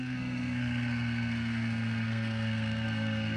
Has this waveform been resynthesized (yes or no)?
yes